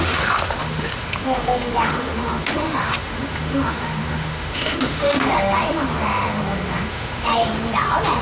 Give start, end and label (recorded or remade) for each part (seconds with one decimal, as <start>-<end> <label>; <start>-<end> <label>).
0.0-7.5 remade; 7.5-8.2 recorded